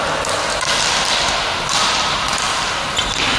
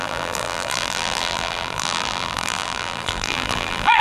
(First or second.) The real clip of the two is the first